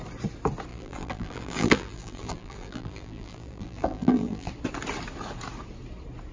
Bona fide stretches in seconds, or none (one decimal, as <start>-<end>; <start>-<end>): 0.0-0.7; 4.5-6.3